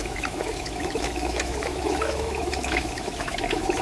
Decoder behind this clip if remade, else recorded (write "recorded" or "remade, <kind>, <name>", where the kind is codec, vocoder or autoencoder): remade, autoencoder, DAC-VAE